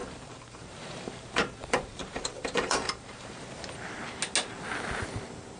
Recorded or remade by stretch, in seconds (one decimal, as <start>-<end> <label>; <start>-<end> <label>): 0.0-3.4 remade; 3.4-5.6 recorded